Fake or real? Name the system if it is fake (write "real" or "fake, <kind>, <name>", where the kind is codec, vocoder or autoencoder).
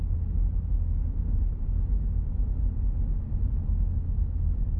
real